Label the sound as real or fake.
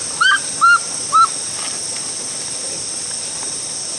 real